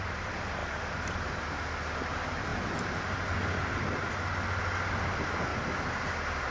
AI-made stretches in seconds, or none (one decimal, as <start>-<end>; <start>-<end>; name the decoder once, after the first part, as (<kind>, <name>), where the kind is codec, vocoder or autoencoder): 0.6-1.3 (vocoder, BigVGAN v2); 5.5-6.5